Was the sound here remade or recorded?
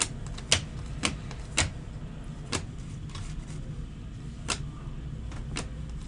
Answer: recorded